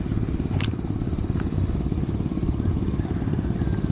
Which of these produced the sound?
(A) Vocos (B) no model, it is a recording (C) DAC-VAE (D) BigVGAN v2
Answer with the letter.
B